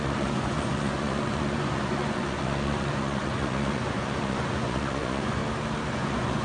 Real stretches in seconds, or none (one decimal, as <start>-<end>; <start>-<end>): 5.4-5.9

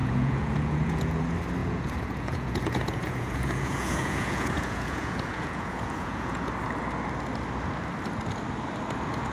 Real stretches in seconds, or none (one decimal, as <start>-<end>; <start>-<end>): 1.2-1.6; 6.5-9.3

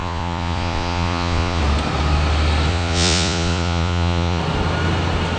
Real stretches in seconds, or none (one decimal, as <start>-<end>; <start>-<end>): 1.6-2.7; 4.4-5.4

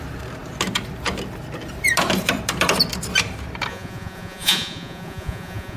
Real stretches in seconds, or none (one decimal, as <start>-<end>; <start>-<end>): 0.0-3.7